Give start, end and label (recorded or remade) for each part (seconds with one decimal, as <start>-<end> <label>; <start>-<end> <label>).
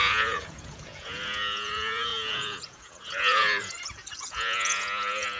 0.0-5.4 remade